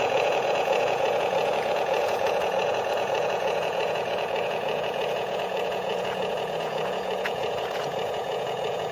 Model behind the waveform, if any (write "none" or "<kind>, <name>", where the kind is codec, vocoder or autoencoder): vocoder, Vocos